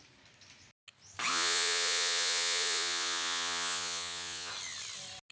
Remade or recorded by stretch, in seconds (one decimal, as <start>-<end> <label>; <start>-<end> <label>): 0.0-1.3 recorded; 1.3-4.5 remade; 4.5-5.3 recorded